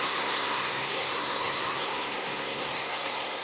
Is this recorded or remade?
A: remade